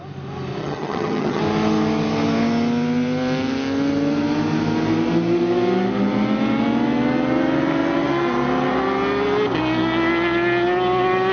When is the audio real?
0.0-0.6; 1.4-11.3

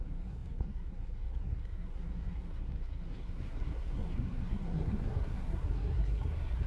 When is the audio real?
none

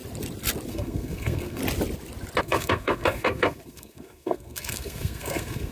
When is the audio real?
0.0-0.7; 1.6-2.4

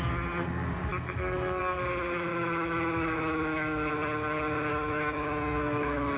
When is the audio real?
0.0-0.9; 1.6-2.3; 3.9-4.7